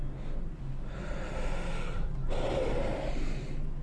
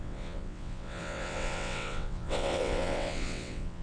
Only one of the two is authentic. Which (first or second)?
first